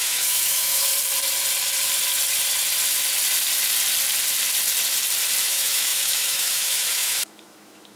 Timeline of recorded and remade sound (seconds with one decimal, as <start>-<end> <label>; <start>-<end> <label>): 0.0-0.9 remade; 0.9-5.4 recorded; 5.4-8.0 remade